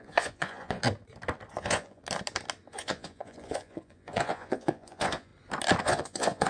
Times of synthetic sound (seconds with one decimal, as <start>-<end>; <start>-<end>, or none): 0.0-0.8; 1.6-2.0; 2.7-5.3; 5.8-6.5